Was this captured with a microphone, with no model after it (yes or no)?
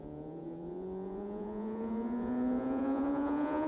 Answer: no